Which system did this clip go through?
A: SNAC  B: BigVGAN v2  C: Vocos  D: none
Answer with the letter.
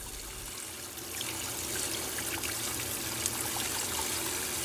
D